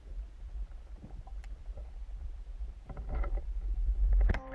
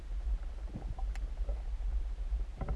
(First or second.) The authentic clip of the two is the second